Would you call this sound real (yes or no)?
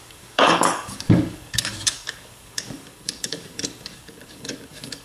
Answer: no